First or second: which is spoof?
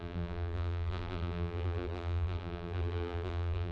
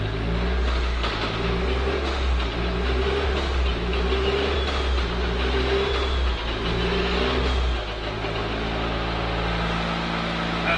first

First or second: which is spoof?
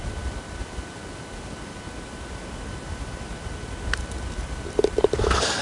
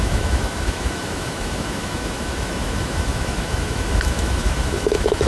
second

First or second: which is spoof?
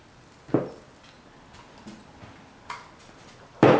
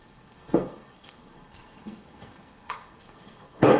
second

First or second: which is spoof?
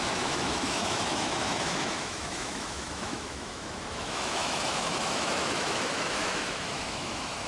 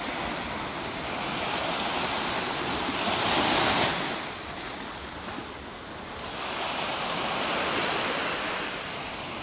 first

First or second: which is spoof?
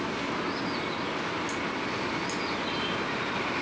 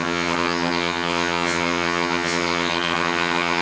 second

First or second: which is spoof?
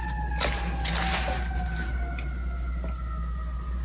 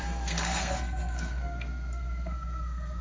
second